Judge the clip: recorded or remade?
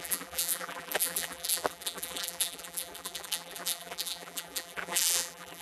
remade